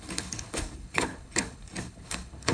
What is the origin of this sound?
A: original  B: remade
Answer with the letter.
B